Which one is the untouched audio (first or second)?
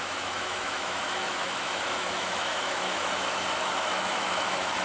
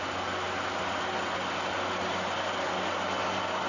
second